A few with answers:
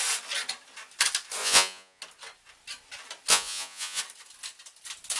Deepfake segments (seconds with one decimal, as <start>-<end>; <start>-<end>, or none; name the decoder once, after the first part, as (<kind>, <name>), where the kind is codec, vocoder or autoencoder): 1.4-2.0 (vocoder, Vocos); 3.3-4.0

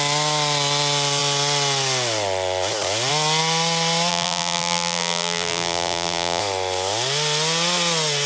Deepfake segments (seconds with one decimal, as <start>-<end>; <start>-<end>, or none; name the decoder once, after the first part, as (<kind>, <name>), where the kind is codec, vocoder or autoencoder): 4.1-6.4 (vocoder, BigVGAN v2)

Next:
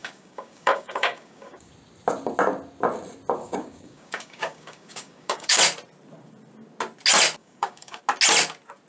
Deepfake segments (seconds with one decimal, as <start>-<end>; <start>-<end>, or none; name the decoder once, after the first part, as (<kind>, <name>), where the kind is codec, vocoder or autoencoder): 0.0-1.7 (codec, DAC); 3.4-5.6; 7.4-8.0

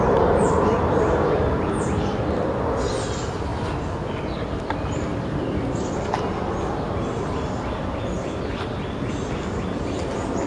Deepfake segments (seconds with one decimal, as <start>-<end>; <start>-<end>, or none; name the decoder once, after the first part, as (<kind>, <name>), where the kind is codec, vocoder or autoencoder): none

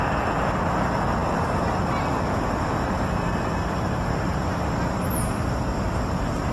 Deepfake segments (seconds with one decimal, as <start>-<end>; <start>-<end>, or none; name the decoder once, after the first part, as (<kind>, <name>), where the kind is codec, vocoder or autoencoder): 0.0-6.5 (vocoder, BigVGAN v2)

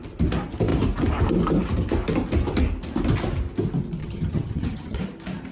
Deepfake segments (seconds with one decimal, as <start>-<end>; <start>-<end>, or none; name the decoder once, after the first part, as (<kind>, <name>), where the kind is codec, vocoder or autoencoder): 4.0-5.0 (vocoder, HiFi-GAN)